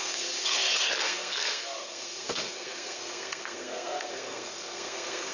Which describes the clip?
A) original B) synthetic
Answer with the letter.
B